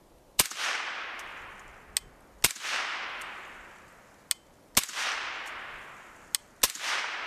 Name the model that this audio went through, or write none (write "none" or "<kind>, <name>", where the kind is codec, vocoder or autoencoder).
none